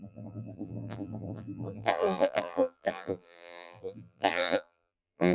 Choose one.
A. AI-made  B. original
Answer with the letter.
A